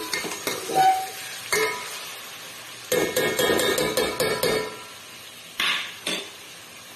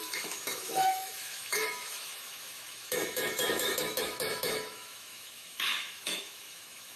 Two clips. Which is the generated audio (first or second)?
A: second